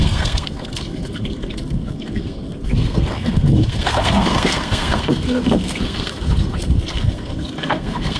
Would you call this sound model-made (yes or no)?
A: yes